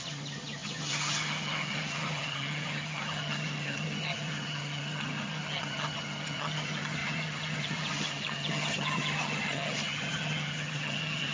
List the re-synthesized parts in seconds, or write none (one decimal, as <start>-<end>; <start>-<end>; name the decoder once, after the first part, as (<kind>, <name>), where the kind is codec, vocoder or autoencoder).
0.0-11.3 (vocoder, HiFi-GAN)